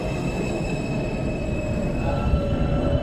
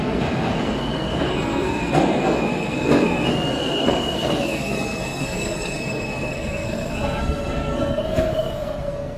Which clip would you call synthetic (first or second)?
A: second